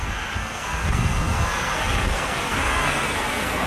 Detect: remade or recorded remade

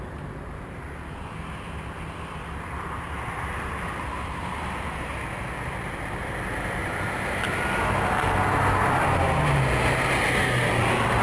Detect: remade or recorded recorded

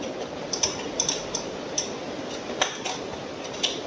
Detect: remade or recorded recorded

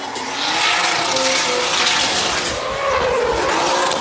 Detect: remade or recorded recorded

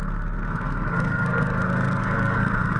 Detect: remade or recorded remade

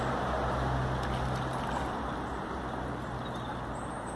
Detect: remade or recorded recorded